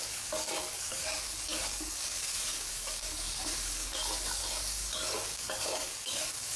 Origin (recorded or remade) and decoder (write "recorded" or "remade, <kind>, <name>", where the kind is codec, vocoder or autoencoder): remade, codec, DAC